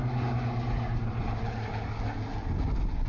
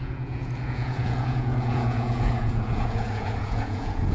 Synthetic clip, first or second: second